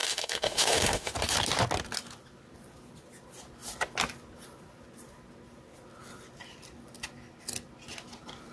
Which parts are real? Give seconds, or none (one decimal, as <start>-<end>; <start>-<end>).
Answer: 1.1-8.5